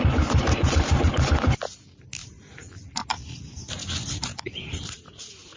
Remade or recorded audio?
recorded